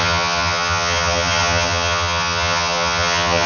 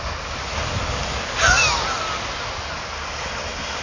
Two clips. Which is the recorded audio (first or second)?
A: second